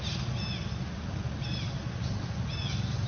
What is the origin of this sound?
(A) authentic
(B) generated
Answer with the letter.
A